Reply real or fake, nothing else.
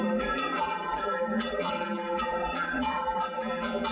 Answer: fake